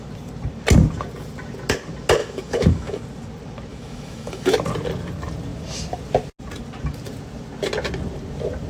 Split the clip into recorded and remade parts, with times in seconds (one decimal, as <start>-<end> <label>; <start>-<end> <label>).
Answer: 0.0-2.2 recorded; 2.2-3.0 remade; 3.0-3.7 recorded; 3.7-4.5 remade; 4.5-8.7 recorded